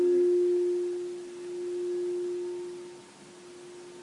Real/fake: real